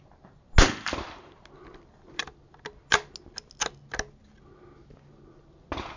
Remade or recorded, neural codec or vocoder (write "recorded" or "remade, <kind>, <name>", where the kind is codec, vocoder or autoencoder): recorded